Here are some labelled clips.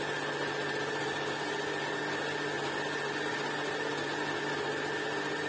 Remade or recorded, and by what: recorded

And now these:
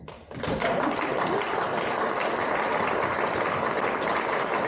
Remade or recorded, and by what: recorded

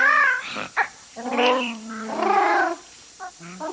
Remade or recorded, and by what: remade, vocoder, BigVGAN v2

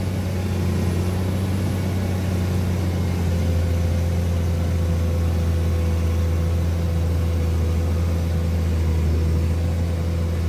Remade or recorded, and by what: recorded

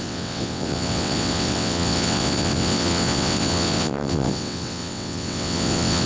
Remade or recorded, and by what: remade, vocoder, WaveNeXt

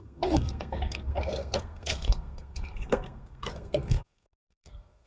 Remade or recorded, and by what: remade, codec, SNAC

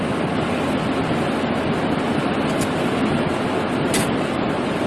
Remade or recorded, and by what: recorded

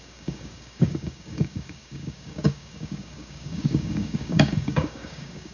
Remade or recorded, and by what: remade, codec, DAC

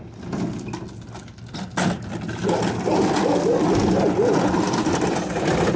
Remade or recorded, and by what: recorded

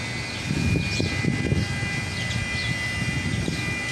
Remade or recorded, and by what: recorded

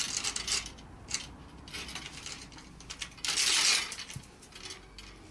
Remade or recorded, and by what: recorded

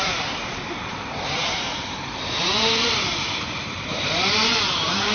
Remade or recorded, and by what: remade, vocoder, BigVGAN v2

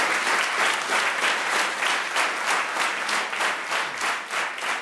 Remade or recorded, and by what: recorded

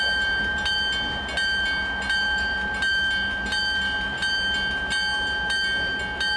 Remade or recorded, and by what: recorded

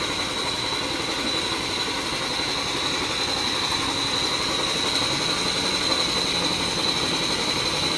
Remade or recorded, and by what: recorded